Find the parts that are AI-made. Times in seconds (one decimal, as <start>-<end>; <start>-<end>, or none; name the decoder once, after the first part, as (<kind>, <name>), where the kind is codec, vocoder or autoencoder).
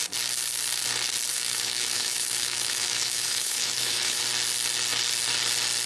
1.3-4.2 (autoencoder, DAC-VAE)